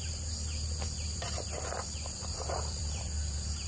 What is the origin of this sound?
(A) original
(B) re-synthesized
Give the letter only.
B